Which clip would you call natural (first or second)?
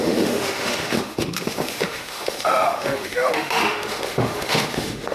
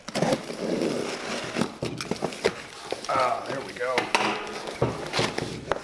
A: second